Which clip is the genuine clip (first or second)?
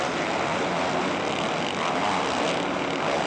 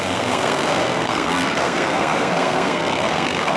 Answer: first